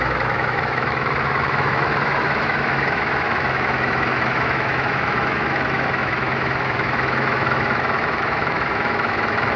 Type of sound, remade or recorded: remade